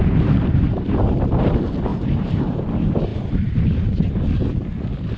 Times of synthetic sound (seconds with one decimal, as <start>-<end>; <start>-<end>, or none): 1.9-2.6; 3.1-4.1